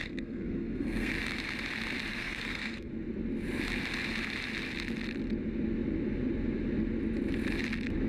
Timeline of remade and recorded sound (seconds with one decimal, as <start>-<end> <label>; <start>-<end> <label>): 0.0-1.1 remade; 1.1-2.1 recorded; 2.1-2.9 remade; 2.9-8.1 recorded